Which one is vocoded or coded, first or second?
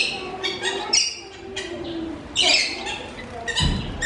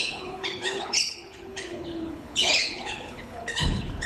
second